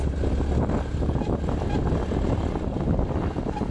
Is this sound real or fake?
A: real